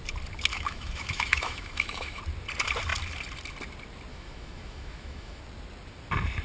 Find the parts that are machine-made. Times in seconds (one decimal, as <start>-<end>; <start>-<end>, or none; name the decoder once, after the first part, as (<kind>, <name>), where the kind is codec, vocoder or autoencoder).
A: 0.5-2.2 (autoencoder, DAC-VAE); 4.1-5.4